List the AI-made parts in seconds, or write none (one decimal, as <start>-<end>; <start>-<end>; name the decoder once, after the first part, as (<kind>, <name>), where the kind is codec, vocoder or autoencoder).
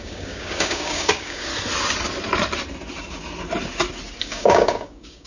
0.0-1.5 (codec, DAC); 4.2-5.3